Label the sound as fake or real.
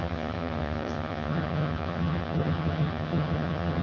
fake